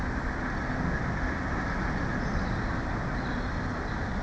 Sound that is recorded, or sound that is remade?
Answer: recorded